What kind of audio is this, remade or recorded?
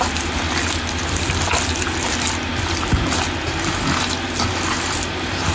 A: recorded